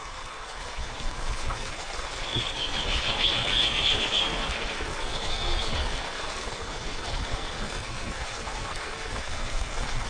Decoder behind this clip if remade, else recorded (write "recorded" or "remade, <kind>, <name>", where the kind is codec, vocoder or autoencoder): remade, codec, SNAC